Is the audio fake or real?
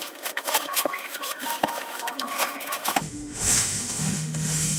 fake